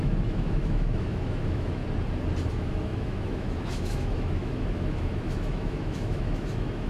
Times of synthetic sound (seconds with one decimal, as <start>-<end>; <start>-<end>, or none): 0.0-1.8; 2.5-6.9